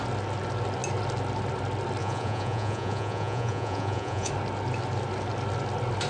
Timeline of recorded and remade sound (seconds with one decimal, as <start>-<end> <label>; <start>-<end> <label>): 0.0-2.0 recorded; 2.0-4.3 remade; 4.3-6.1 recorded